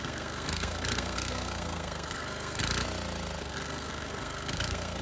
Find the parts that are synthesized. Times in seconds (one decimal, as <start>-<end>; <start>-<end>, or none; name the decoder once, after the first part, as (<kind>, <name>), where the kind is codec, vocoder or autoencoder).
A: 0.0-2.6 (codec, SNAC); 3.4-5.0